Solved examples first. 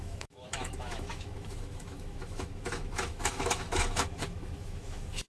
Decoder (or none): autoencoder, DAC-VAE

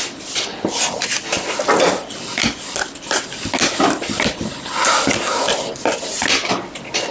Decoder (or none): none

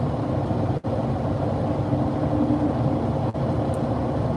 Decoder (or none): none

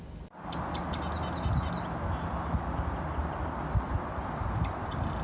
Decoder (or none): none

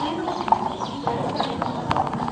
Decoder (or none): none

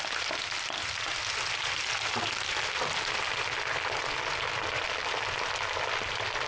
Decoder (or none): none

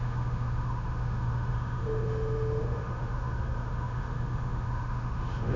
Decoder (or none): autoencoder, DAC-VAE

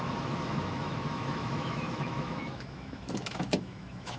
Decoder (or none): autoencoder, DAC-VAE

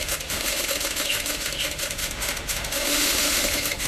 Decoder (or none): autoencoder, DAC-VAE